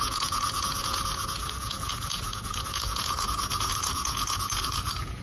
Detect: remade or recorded remade